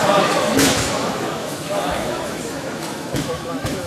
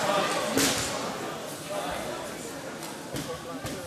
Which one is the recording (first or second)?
second